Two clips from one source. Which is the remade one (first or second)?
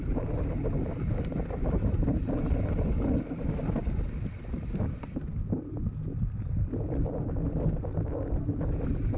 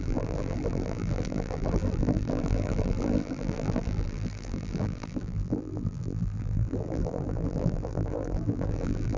second